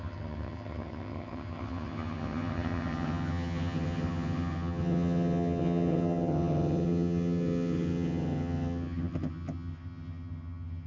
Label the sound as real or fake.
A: fake